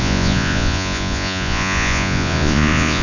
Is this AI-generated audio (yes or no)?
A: yes